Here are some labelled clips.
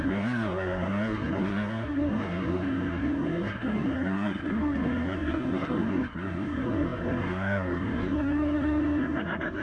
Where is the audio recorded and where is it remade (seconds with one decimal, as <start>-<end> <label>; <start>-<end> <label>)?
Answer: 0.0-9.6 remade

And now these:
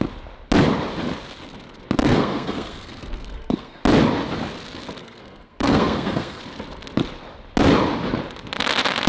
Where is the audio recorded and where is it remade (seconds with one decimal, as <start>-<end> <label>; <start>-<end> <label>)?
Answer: 0.0-2.0 recorded; 2.0-3.8 remade; 3.8-5.0 recorded; 5.0-6.4 remade; 6.4-9.1 recorded

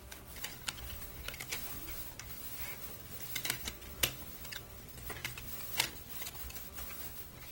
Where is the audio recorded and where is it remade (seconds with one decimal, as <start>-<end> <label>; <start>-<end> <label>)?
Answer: 0.0-7.5 recorded

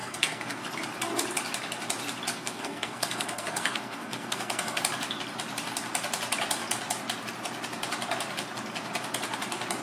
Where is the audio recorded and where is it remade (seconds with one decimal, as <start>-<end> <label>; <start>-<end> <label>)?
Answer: 0.0-0.6 remade; 0.6-2.3 recorded; 2.3-4.8 remade; 4.8-9.8 recorded

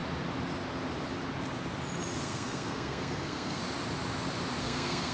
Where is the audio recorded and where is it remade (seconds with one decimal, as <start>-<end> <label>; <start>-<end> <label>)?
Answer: 0.0-2.2 recorded; 2.2-3.6 remade; 3.6-4.6 recorded; 4.6-5.1 remade

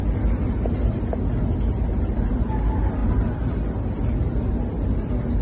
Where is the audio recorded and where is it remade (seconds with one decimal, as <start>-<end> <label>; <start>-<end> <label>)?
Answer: 0.0-5.4 recorded